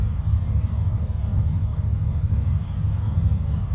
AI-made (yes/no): yes